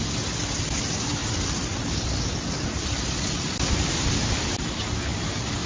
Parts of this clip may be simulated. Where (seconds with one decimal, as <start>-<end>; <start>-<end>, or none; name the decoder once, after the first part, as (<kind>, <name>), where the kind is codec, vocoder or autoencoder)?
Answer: none